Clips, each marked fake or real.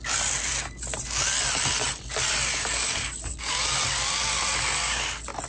real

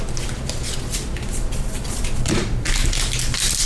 real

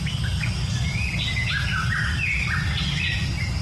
real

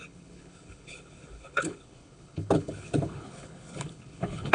fake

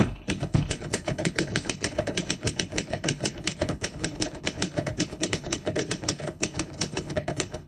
fake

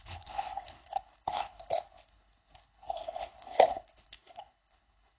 fake